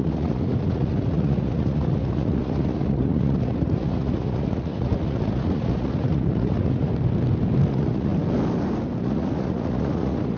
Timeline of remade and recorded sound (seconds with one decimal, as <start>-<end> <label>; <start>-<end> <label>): 0.0-6.9 remade; 6.9-7.7 recorded; 7.7-8.1 remade; 8.1-9.0 recorded; 9.0-10.4 remade